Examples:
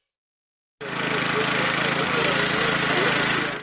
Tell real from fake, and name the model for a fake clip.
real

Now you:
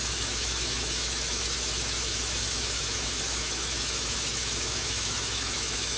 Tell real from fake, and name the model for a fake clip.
fake, autoencoder, DAC-VAE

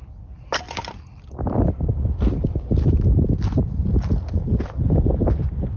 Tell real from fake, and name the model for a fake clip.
real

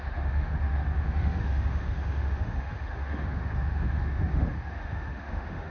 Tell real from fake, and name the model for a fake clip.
fake, autoencoder, DAC-VAE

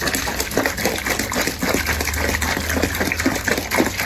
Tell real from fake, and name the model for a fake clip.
real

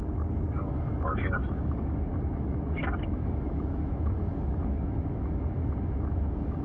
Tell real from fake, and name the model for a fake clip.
fake, autoencoder, DAC-VAE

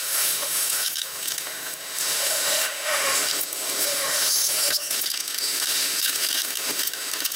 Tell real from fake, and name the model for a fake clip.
fake, autoencoder, DAC-VAE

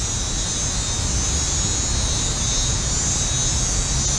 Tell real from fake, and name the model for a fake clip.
real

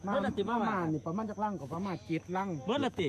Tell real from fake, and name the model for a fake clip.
fake, autoencoder, DAC-VAE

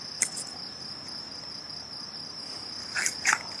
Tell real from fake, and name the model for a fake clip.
real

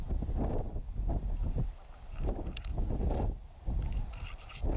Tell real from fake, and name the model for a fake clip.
real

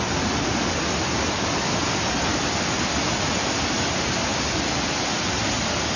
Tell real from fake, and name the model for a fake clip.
real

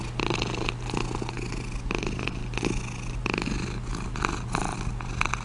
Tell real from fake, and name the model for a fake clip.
real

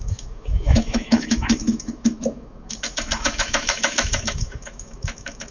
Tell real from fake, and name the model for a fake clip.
fake, autoencoder, DAC-VAE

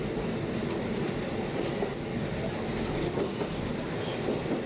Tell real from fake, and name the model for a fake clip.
real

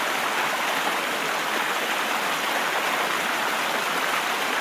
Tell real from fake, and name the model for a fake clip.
real